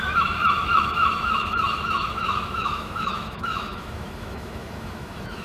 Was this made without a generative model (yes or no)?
no